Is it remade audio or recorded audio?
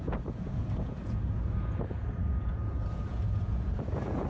remade